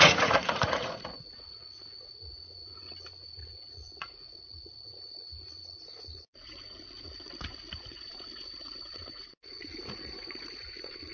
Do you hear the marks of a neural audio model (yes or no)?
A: yes